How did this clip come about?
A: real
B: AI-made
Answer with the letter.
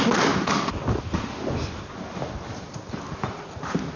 A